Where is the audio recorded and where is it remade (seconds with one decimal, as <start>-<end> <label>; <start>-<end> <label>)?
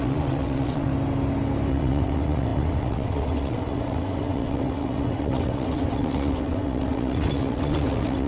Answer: 0.0-0.9 remade; 0.9-1.7 recorded; 1.7-8.3 remade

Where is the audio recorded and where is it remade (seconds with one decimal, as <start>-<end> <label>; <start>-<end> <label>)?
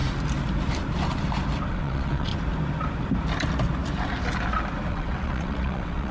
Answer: 0.0-1.7 recorded; 1.7-2.3 remade; 2.3-4.9 recorded; 4.9-6.1 remade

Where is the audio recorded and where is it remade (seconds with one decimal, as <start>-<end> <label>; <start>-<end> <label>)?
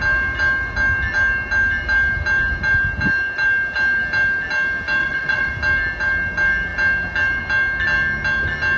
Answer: 0.0-5.0 recorded; 5.0-5.5 remade; 5.5-8.8 recorded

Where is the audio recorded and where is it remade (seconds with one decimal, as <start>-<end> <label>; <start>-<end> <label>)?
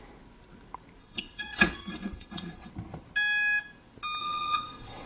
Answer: 0.0-1.0 recorded; 1.0-2.7 remade; 2.7-4.2 recorded; 4.2-5.1 remade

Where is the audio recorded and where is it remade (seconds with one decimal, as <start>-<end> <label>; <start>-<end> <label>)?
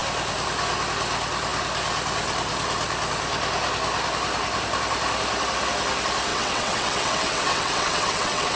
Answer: 0.0-6.3 recorded; 6.3-8.6 remade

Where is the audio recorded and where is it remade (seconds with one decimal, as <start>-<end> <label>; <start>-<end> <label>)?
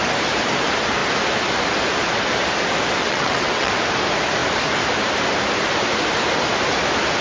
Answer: 0.0-3.0 recorded; 3.0-3.7 remade; 3.7-7.2 recorded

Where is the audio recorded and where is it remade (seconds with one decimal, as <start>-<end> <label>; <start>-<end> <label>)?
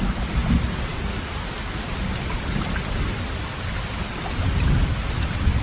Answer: 0.0-5.6 recorded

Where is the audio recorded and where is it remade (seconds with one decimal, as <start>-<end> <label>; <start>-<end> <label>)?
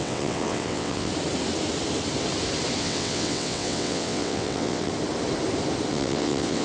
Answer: 0.0-1.1 remade; 1.1-2.8 recorded; 2.8-4.9 remade; 4.9-5.9 recorded; 5.9-6.6 remade